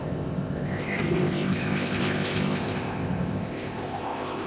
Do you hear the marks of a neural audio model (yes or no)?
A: yes